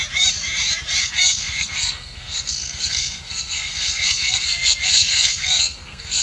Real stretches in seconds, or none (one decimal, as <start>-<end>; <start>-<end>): 0.0-1.0